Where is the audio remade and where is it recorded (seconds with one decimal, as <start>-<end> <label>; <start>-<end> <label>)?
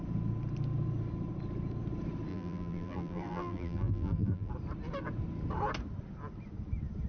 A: 0.0-2.3 recorded; 2.3-4.5 remade; 4.5-7.1 recorded